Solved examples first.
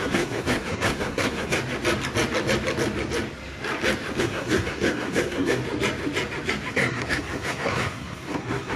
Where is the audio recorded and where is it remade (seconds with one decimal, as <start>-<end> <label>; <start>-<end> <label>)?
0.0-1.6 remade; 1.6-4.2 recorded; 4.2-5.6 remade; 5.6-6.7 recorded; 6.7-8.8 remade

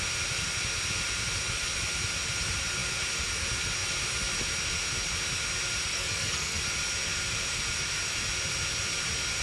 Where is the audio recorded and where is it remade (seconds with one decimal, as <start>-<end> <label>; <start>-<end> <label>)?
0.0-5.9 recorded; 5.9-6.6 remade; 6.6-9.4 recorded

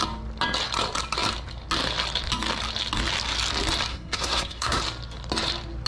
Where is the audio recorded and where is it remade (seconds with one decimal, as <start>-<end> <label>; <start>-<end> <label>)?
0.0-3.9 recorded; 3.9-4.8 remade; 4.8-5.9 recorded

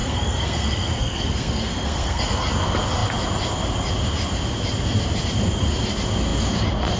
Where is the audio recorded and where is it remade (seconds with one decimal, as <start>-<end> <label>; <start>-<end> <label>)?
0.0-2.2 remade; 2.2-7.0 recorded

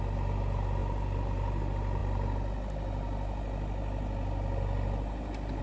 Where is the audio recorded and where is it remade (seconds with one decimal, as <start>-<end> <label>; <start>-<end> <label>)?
0.0-5.6 recorded